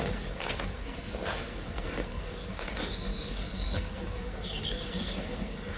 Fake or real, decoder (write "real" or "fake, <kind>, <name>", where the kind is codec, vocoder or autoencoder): fake, codec, SNAC